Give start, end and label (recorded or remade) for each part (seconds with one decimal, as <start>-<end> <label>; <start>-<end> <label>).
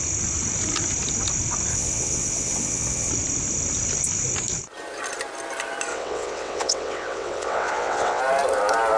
0.0-1.7 recorded; 1.7-3.1 remade; 3.1-5.9 recorded; 5.9-8.2 remade; 8.2-9.0 recorded